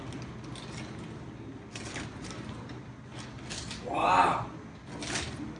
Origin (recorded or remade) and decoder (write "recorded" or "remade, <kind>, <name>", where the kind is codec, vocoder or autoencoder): recorded